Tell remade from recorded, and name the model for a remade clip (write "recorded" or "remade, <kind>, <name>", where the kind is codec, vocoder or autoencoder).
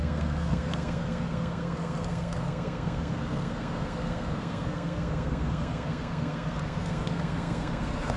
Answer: remade, codec, SNAC